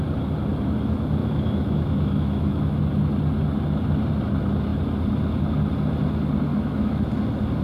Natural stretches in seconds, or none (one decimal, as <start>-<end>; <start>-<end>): 0.0-1.2; 2.8-6.5; 7.1-7.6